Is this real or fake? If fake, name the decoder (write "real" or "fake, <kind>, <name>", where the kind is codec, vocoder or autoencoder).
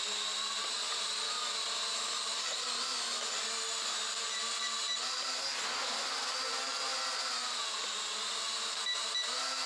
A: real